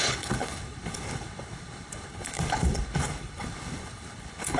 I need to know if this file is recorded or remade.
remade